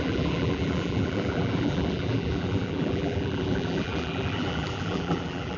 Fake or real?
fake